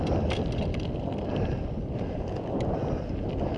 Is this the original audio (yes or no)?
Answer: yes